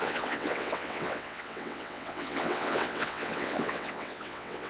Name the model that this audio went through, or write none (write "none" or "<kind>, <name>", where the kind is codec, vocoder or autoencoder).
vocoder, WaveNeXt